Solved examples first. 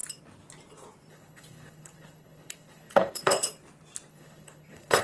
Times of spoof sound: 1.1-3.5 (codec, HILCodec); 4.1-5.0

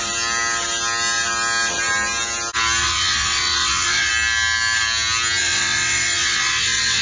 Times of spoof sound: 2.8-4.1 (vocoder, WaveNeXt); 5.4-7.0

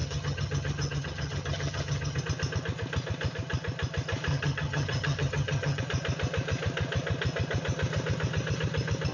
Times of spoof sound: 0.0-2.2 (vocoder, HiFi-GAN); 4.3-5.8